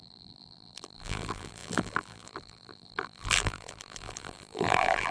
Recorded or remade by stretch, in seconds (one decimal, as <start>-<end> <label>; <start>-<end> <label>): 0.0-5.1 remade